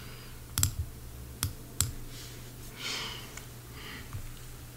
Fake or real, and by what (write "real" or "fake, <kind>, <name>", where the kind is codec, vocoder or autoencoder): real